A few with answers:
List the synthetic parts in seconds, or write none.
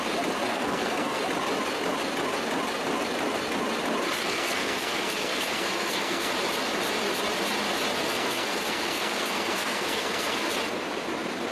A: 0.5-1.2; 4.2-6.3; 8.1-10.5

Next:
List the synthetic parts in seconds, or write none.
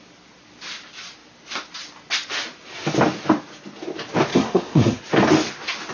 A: 4.3-5.0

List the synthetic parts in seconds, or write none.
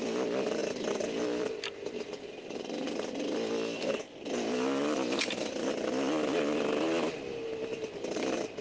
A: none